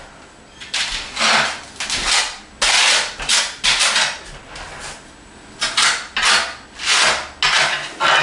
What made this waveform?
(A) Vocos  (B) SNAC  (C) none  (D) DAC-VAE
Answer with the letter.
C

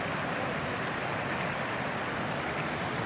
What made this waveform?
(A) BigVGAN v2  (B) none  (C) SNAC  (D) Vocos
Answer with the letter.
B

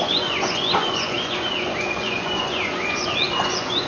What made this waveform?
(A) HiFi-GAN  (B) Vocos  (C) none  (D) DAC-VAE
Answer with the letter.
B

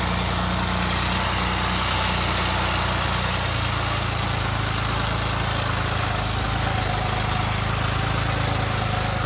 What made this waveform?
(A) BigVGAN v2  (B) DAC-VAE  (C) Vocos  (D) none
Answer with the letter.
D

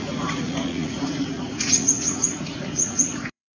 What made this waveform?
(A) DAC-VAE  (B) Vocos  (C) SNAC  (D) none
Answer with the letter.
B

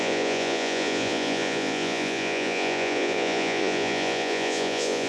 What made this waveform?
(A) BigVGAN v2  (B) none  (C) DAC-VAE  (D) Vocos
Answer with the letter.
D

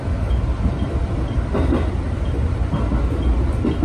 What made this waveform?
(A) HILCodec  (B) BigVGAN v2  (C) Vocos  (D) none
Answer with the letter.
D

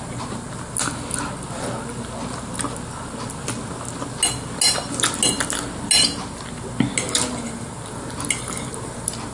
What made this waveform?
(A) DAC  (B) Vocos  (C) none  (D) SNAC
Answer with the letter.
C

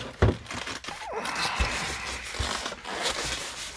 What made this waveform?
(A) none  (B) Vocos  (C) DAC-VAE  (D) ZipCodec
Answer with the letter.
A